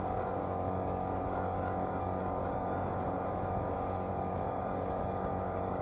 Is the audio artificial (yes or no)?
yes